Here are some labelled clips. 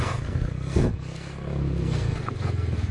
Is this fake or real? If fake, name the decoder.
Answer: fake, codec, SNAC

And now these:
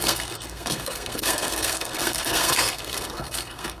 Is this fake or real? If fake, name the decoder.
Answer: fake, codec, SNAC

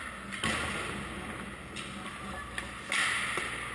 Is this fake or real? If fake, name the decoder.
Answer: real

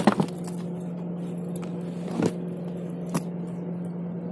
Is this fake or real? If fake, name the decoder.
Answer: real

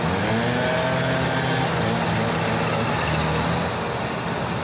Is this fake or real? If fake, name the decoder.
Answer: real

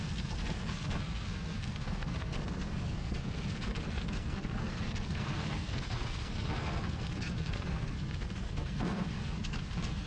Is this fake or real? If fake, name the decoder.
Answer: fake, codec, SNAC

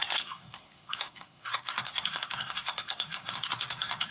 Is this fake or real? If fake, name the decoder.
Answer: fake, codec, SNAC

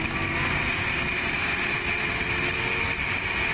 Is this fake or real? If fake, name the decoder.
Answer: real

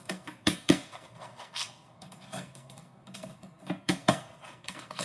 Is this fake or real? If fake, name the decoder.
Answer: fake, codec, SNAC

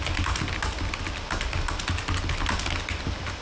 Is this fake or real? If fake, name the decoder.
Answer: real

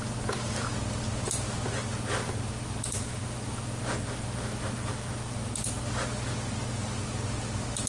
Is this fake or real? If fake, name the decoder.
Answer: real